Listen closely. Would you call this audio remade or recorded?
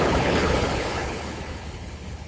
remade